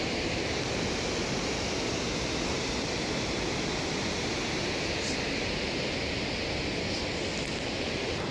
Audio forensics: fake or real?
real